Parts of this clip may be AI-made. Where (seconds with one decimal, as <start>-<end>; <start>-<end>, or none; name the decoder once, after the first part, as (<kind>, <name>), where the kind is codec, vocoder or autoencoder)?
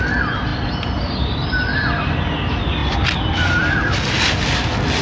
none